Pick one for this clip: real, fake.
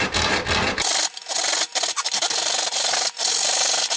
real